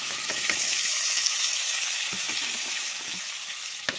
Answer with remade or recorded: remade